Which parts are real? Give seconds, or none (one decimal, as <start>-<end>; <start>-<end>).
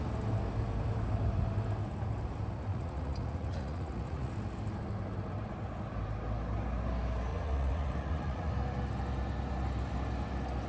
0.0-2.7; 4.3-7.3; 8.5-10.7